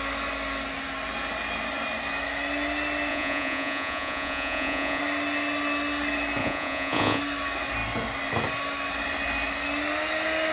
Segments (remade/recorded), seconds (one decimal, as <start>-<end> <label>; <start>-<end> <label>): 0.0-3.1 recorded; 3.1-5.0 remade; 5.0-6.4 recorded; 6.4-7.2 remade; 7.2-10.5 recorded